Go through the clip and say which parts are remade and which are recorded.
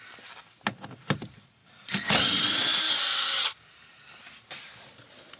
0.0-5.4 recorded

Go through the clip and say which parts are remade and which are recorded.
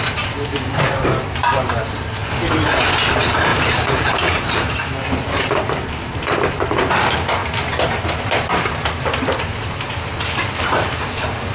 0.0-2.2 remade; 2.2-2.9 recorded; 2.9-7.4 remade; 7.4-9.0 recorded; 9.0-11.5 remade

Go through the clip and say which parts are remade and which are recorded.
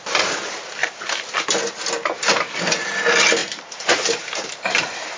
0.0-0.8 recorded; 0.8-1.7 remade; 1.7-3.4 recorded; 3.4-5.2 remade